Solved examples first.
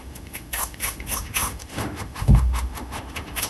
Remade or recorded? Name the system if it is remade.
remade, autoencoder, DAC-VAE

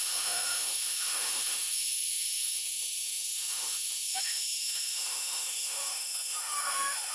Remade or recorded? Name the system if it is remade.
remade, autoencoder, DAC-VAE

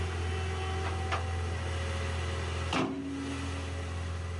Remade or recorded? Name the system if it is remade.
recorded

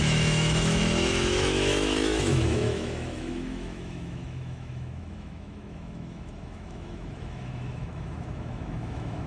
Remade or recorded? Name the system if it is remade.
remade, autoencoder, DAC-VAE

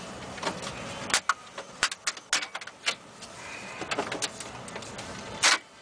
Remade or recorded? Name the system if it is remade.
recorded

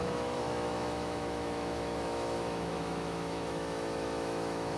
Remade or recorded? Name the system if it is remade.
remade, autoencoder, DAC-VAE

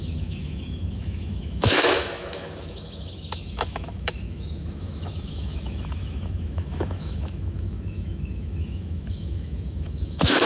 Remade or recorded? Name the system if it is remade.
remade, autoencoder, DAC-VAE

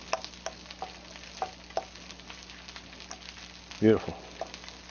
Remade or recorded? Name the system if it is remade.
recorded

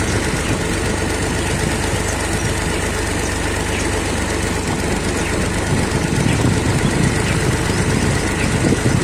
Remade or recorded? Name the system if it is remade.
recorded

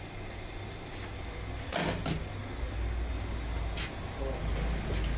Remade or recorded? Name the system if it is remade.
recorded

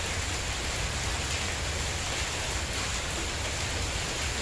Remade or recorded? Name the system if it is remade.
recorded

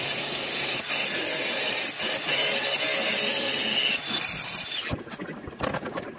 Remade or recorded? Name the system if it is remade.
recorded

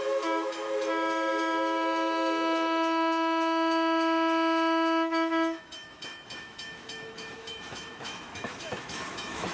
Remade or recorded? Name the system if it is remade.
remade, autoencoder, DAC-VAE